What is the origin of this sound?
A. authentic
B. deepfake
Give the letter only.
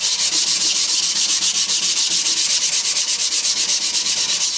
A